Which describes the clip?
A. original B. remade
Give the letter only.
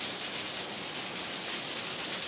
A